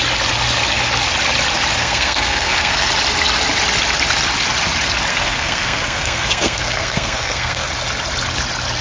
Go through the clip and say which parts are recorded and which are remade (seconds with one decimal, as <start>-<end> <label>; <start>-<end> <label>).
0.0-1.8 recorded; 1.8-2.9 remade; 2.9-5.1 recorded; 5.1-7.7 remade; 7.7-8.8 recorded